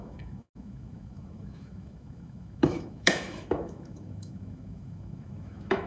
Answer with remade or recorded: remade